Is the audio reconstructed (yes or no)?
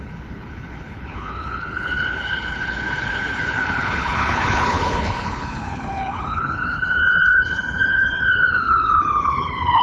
yes